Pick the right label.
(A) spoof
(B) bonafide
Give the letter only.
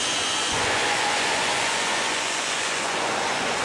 A